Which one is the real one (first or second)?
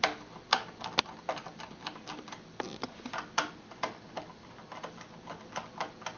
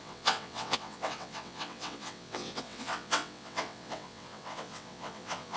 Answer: first